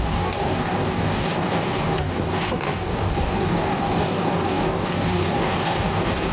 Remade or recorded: remade